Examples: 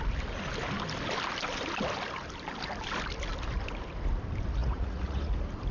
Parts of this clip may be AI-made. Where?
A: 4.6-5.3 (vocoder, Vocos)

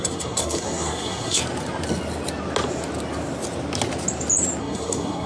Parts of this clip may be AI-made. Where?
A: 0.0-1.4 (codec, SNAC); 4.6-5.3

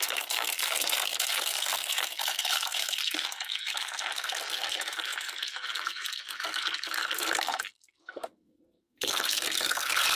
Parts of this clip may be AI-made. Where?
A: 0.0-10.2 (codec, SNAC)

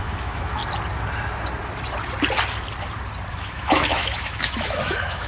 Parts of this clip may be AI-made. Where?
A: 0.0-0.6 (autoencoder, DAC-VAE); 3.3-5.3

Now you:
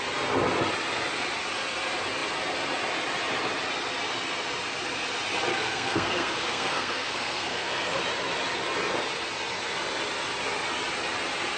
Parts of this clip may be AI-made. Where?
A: 5.5-8.0 (codec, SNAC)

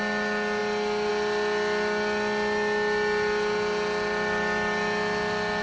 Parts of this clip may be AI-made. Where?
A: none